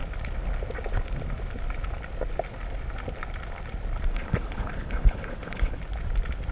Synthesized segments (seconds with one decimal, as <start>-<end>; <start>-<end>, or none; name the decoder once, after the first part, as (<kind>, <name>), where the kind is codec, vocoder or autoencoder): 4.1-5.8 (codec, HILCodec)